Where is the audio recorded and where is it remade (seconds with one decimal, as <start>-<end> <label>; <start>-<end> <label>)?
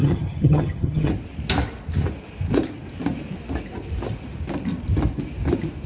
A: 0.0-1.1 remade; 1.1-5.9 recorded